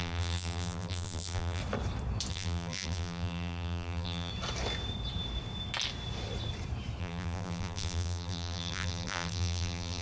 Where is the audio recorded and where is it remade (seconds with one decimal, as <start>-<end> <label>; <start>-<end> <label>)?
0.0-1.6 remade; 1.6-2.3 recorded; 2.3-4.3 remade; 4.3-7.0 recorded; 7.0-10.0 remade